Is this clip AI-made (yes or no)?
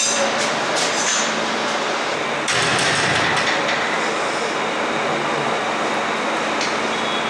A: no